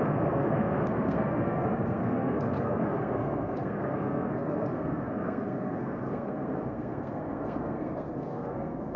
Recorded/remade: remade